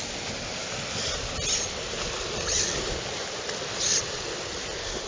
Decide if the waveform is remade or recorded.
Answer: recorded